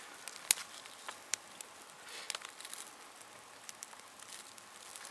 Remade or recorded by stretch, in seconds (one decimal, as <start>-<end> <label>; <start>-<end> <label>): 0.0-5.1 recorded